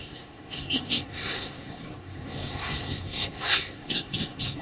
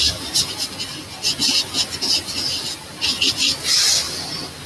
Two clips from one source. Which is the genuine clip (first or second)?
second